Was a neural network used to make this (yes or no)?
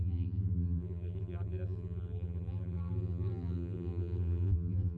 yes